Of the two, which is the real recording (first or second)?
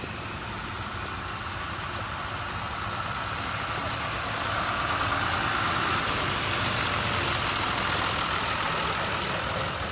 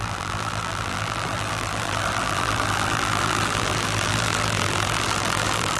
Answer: first